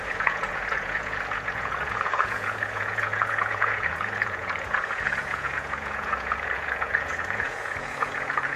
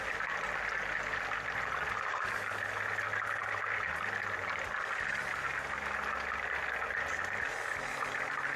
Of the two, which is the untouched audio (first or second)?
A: second